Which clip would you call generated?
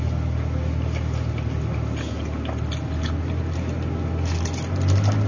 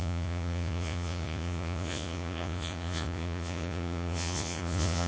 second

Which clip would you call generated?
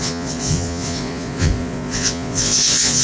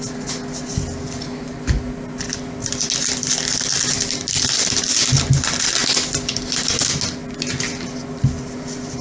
first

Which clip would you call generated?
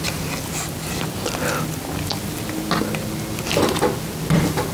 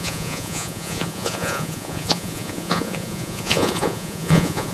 second